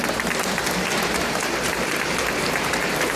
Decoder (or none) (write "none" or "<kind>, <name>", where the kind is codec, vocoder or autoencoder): vocoder, BigVGAN v2